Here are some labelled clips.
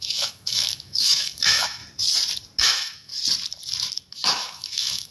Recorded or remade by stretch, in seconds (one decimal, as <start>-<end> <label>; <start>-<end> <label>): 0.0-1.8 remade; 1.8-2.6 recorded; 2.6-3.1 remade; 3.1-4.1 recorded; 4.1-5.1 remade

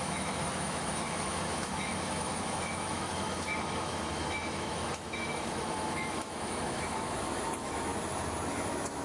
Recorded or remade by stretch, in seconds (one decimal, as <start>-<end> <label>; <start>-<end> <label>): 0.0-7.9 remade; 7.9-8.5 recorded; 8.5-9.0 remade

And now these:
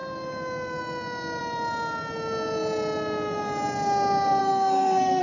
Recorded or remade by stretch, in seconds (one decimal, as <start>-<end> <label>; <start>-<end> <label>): 0.0-4.4 recorded; 4.4-5.2 remade

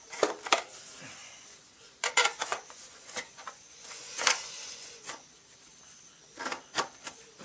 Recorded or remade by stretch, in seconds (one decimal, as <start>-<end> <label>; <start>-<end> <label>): 0.0-1.2 recorded; 1.2-5.4 remade; 5.4-7.4 recorded

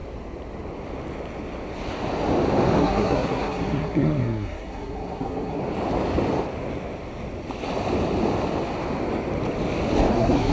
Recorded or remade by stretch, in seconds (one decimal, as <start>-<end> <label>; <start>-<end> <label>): 0.0-2.8 recorded; 2.8-5.6 remade; 5.6-10.1 recorded; 10.1-10.5 remade

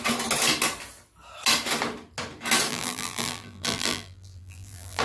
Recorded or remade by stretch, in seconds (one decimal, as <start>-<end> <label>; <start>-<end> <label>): 0.0-2.7 recorded; 2.7-5.0 remade